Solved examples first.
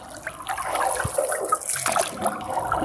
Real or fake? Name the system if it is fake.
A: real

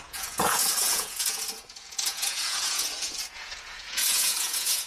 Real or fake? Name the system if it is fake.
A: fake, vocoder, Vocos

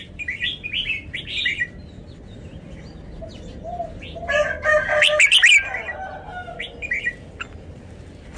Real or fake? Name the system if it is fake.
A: real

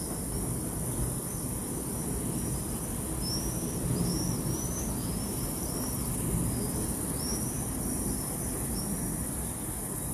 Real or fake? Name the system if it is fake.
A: real